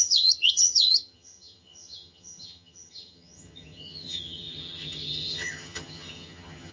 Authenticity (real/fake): fake